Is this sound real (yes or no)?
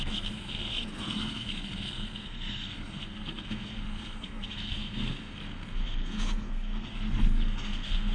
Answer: no